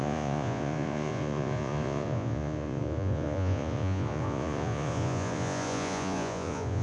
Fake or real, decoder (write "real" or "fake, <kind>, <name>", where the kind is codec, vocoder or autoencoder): fake, vocoder, Vocos